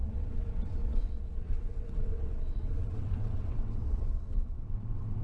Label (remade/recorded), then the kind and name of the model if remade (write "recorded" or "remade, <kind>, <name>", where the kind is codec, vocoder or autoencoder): remade, vocoder, WaveNeXt